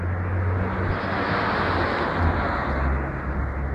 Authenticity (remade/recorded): recorded